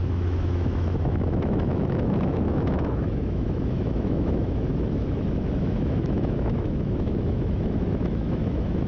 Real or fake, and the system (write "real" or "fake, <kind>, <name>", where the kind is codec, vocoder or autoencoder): fake, autoencoder, DAC-VAE